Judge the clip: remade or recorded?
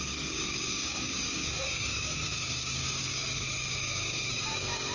remade